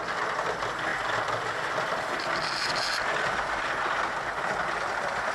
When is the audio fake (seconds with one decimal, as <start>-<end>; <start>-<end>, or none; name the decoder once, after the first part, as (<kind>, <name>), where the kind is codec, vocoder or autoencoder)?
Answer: none